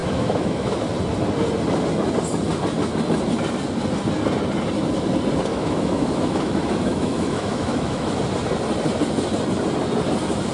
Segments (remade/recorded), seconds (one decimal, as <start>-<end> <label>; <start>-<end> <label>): 0.0-0.8 remade; 0.8-5.5 recorded; 5.5-8.2 remade; 8.2-10.5 recorded